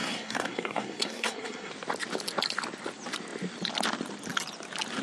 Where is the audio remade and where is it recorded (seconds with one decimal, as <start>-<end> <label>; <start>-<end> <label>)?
0.0-1.7 remade; 1.7-5.0 recorded